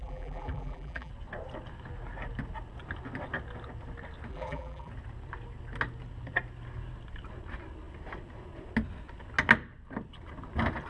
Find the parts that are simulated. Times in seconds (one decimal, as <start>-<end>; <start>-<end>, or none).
0.0-1.1; 4.3-4.9